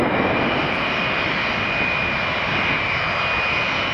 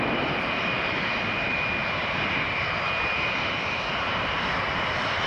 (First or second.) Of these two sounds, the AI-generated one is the second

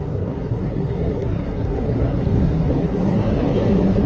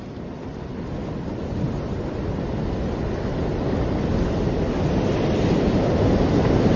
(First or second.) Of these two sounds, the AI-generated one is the first